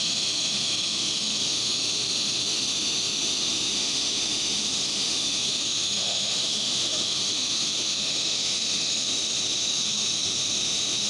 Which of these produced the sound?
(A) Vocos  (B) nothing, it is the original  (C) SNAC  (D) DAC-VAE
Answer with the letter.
D